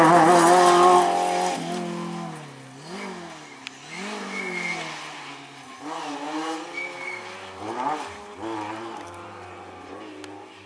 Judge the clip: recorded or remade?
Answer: recorded